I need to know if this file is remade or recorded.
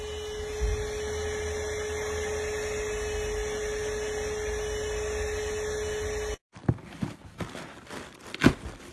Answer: recorded